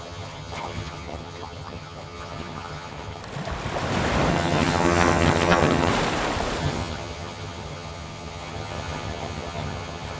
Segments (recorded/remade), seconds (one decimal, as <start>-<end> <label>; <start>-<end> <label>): 0.0-3.2 remade; 3.2-4.3 recorded; 4.3-5.9 remade; 5.9-6.6 recorded; 6.6-10.2 remade